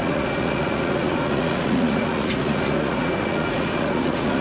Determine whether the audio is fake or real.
fake